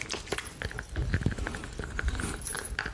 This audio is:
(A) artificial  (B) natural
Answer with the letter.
B